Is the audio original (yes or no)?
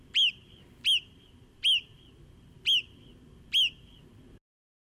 yes